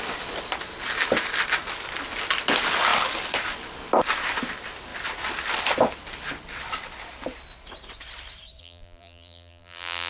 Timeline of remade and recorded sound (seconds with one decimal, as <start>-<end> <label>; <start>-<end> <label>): 0.0-8.6 recorded; 8.6-10.1 remade